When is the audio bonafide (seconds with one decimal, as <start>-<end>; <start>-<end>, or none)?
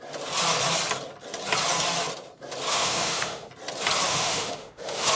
0.0-2.7; 3.5-4.1